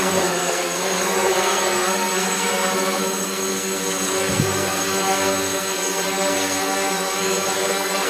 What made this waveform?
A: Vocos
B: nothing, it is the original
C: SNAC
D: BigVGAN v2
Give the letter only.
C